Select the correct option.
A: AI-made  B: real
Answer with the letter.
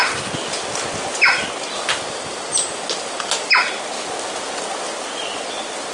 B